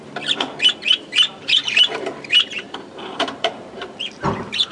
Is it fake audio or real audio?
fake